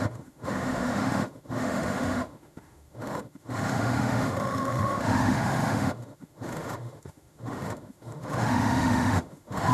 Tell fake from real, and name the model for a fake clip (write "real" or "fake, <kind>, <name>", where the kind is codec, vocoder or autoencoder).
fake, autoencoder, DAC-VAE